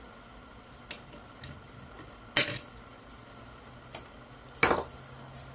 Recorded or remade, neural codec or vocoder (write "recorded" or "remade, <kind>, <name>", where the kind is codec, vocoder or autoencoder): recorded